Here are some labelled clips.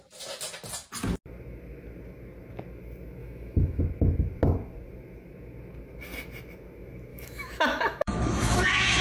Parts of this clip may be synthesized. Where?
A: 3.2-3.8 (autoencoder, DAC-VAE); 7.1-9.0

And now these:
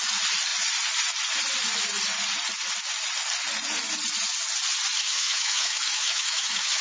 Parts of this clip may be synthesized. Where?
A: 5.0-6.8 (autoencoder, DAC-VAE)